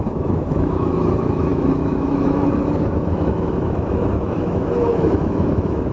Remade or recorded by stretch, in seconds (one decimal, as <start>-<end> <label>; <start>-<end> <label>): 0.0-5.9 remade